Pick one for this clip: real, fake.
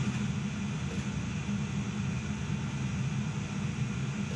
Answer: real